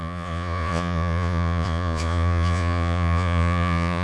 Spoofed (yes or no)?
yes